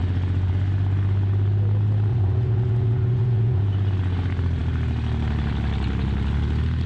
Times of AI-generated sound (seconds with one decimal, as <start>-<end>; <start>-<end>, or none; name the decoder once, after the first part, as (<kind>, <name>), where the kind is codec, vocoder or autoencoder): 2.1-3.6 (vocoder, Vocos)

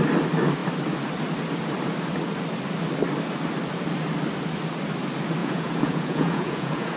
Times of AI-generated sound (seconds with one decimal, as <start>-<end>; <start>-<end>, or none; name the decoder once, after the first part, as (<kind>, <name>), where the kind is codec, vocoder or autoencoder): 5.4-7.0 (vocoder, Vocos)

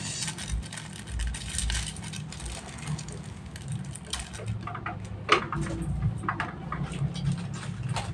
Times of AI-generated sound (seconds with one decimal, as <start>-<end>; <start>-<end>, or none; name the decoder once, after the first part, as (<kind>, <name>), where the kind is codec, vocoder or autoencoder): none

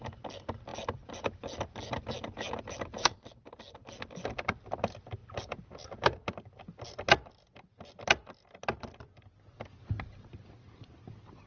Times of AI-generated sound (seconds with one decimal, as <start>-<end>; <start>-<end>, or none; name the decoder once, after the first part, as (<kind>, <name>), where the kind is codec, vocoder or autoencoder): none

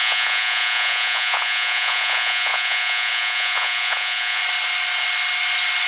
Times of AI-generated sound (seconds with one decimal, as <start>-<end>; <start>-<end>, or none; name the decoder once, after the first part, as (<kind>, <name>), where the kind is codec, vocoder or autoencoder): 0.0-4.4 (vocoder, Vocos)